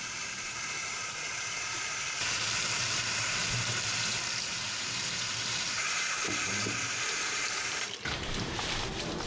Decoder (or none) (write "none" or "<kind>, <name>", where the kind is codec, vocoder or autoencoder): vocoder, BigVGAN v2